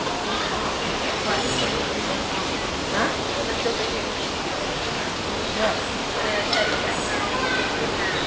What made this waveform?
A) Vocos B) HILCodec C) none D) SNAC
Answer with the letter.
C